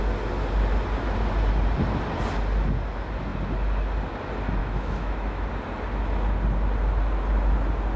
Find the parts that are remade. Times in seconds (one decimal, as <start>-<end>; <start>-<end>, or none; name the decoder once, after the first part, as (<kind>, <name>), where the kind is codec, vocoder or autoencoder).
4.6-5.5 (autoencoder, DAC-VAE)